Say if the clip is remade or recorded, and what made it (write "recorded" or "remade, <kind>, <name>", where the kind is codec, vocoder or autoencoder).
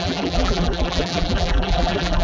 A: remade, vocoder, BigVGAN v2